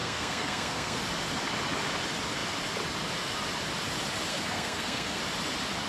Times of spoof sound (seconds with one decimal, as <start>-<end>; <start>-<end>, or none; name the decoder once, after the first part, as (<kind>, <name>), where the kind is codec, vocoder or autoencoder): 0.0-1.0 (codec, SNAC); 4.3-5.2